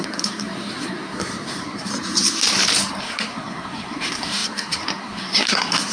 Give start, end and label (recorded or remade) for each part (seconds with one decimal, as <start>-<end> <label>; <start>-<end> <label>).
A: 0.0-1.9 remade; 1.9-3.0 recorded; 3.0-5.9 remade